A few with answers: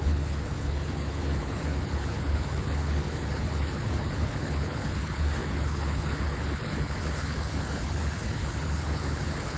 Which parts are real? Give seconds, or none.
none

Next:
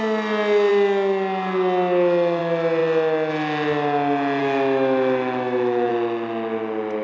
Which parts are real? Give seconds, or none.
0.0-4.4; 5.9-7.0